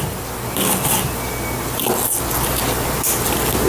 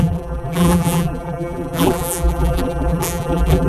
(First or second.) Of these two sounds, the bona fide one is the first